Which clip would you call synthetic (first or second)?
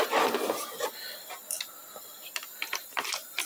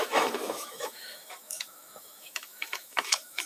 second